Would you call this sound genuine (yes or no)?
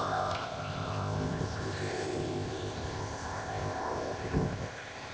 no